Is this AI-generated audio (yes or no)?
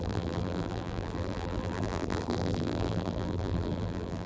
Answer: yes